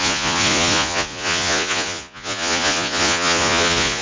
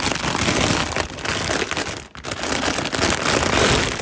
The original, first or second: second